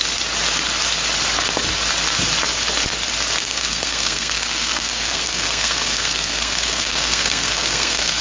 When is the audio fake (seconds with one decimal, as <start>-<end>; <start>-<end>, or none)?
3.4-8.2